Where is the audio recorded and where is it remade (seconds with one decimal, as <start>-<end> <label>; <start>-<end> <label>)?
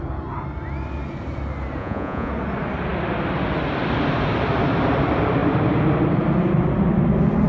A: 0.0-1.8 recorded; 1.8-2.3 remade; 2.3-7.5 recorded